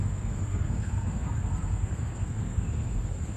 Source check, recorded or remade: remade